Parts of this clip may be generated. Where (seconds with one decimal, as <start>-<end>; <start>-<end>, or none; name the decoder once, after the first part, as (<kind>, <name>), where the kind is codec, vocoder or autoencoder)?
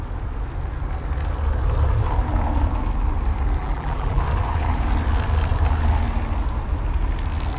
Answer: 3.6-4.2 (vocoder, BigVGAN v2)